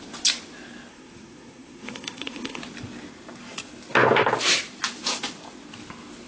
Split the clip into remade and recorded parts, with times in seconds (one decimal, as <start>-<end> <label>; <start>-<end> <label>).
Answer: 0.0-0.9 recorded; 0.9-2.6 remade; 2.6-6.3 recorded